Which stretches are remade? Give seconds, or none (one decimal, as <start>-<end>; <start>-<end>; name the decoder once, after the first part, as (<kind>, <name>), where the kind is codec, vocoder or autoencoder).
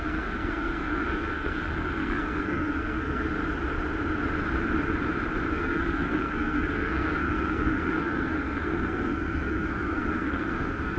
0.0-3.4 (codec, SNAC); 5.5-11.0